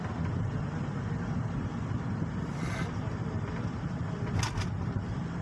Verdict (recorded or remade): recorded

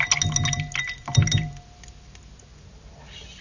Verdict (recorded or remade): recorded